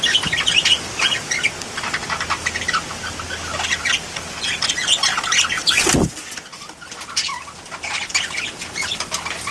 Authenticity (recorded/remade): recorded